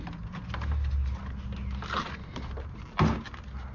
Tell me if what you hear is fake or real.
real